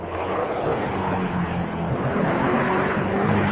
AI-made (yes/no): yes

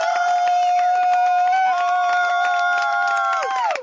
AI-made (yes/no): no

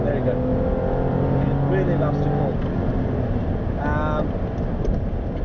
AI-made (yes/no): no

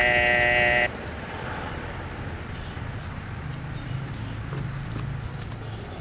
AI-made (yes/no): no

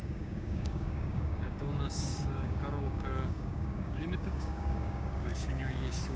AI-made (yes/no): yes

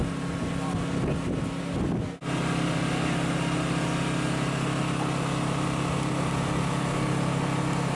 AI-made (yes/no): no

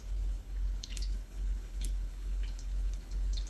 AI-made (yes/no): yes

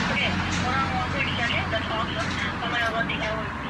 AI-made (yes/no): no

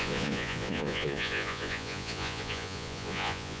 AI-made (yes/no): yes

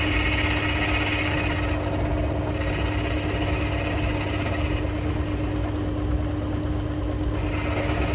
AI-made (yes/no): no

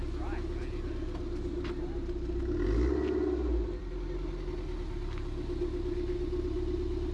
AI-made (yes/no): no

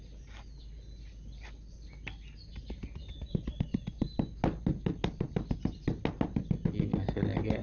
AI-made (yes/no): no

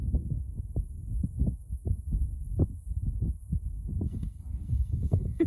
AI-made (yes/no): yes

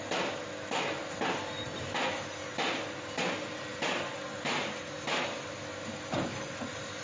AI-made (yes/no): no